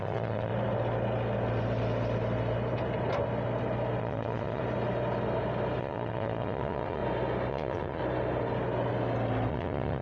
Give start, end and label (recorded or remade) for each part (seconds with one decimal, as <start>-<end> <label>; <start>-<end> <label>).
0.0-0.5 remade; 0.5-4.0 recorded; 4.0-4.6 remade; 4.6-5.8 recorded; 5.8-7.0 remade; 7.0-7.5 recorded; 7.5-8.0 remade; 8.0-9.5 recorded; 9.5-10.0 remade